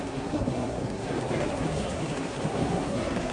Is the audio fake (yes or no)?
yes